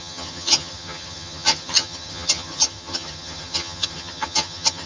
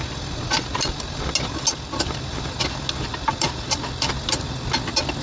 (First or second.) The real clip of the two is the second